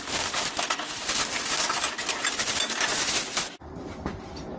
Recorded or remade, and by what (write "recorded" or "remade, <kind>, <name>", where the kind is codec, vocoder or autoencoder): recorded